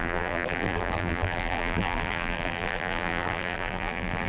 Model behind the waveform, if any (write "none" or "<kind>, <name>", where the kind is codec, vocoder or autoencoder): vocoder, BigVGAN v2